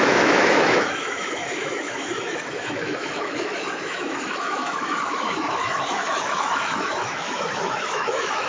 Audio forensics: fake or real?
fake